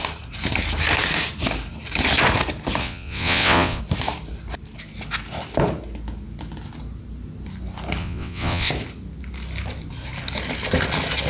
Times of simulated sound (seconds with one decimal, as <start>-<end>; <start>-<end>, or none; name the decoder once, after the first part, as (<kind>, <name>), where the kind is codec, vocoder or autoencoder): 2.8-3.8 (vocoder, WaveNeXt); 8.0-8.7